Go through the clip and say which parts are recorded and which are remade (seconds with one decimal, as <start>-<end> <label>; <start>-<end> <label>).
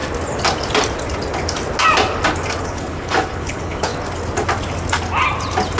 0.0-2.6 recorded; 2.6-3.9 remade; 3.9-5.8 recorded